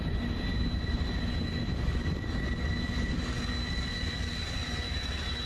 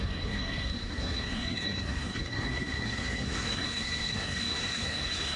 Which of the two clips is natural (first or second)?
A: first